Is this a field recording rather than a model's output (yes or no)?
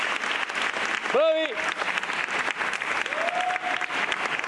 yes